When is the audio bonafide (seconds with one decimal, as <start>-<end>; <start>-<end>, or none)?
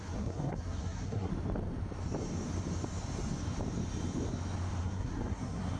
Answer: 1.3-4.8